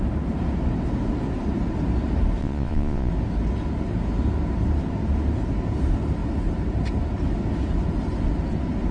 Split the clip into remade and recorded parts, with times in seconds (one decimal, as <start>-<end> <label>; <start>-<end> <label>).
0.0-2.4 recorded; 2.4-3.1 remade; 3.1-8.9 recorded